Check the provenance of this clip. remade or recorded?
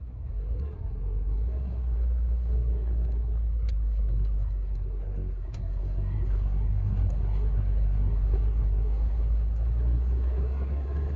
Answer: remade